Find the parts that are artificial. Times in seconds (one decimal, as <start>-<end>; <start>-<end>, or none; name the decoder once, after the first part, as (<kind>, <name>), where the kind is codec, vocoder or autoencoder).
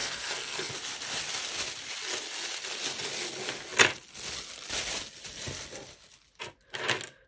0.0-0.7 (codec, SNAC)